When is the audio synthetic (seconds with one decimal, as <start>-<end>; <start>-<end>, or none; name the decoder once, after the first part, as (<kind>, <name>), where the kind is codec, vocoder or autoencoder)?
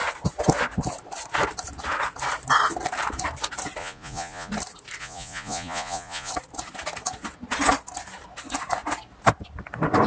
3.8-4.5 (vocoder, Vocos); 5.0-6.3